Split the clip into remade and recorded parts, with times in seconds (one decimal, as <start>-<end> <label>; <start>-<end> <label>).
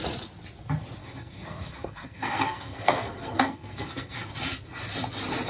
0.0-1.0 recorded; 1.0-4.3 remade; 4.3-5.5 recorded